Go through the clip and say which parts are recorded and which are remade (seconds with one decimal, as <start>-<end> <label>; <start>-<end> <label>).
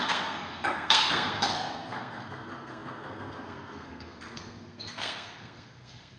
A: 0.0-6.2 remade